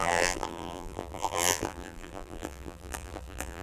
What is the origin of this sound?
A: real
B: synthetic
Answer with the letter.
B